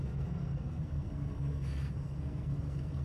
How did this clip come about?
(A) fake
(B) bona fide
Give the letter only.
A